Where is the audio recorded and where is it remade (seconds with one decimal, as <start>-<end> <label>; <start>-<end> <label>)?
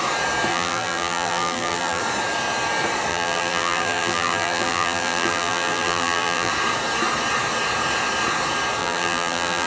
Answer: 0.0-0.5 recorded; 0.5-2.0 remade; 2.0-3.1 recorded; 3.1-6.5 remade; 6.5-8.8 recorded; 8.8-9.7 remade